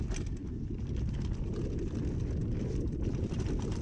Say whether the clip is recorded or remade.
recorded